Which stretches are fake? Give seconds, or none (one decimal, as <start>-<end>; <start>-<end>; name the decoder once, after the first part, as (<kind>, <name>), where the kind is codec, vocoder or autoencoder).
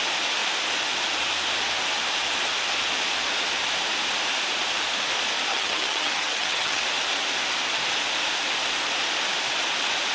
5.5-6.8 (vocoder, HiFi-GAN)